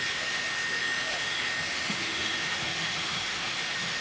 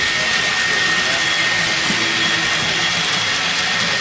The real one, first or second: second